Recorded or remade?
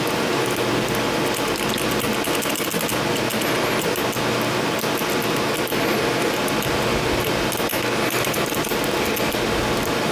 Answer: recorded